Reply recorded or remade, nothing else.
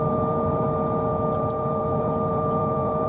remade